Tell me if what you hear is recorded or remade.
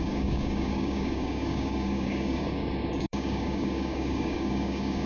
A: remade